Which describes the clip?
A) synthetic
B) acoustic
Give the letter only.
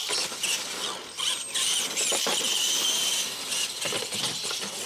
B